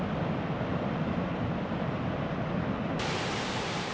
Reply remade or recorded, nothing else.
recorded